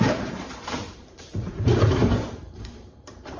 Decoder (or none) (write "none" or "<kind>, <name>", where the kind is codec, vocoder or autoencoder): vocoder, BigVGAN v2